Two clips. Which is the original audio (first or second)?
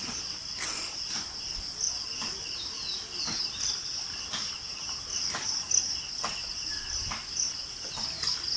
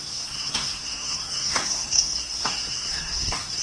first